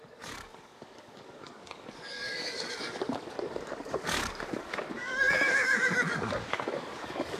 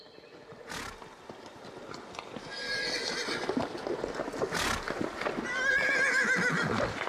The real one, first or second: second